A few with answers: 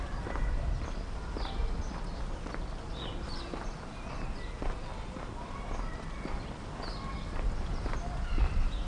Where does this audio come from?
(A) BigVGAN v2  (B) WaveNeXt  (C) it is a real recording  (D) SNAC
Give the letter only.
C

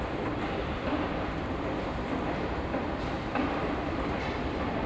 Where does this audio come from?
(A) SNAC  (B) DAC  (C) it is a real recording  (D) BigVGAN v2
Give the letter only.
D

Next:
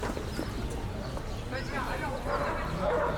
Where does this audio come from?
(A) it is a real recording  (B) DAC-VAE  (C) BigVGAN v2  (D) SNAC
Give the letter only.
A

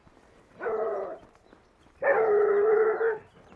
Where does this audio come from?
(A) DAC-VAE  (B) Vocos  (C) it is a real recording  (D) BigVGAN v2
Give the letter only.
C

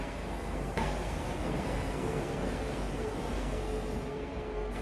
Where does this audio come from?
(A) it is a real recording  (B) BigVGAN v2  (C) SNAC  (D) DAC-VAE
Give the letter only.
C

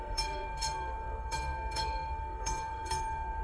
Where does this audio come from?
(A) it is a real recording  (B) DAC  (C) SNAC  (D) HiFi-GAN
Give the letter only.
C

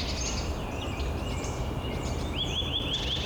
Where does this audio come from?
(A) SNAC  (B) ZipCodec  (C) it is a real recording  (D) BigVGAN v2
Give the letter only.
C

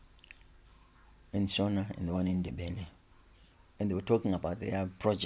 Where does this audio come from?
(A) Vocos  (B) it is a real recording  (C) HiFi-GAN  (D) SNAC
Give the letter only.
B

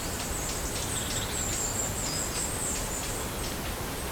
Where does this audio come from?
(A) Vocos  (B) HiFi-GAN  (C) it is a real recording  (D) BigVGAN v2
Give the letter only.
C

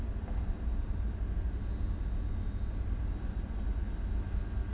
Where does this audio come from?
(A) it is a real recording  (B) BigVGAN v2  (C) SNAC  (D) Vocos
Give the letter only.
A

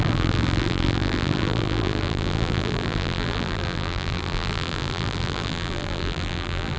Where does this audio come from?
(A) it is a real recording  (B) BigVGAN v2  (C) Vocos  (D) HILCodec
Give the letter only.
B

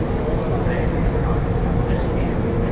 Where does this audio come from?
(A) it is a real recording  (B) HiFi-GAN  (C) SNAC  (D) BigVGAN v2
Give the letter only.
A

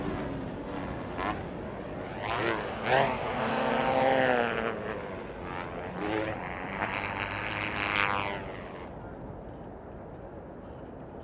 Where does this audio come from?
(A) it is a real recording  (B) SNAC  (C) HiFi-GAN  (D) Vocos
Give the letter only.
A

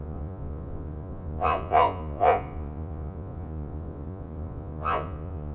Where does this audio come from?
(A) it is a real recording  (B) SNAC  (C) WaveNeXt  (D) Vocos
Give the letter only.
D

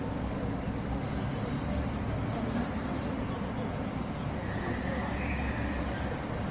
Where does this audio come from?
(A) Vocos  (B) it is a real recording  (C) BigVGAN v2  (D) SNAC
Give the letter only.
B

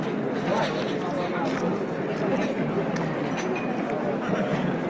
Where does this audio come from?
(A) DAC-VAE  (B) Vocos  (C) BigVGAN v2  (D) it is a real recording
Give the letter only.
D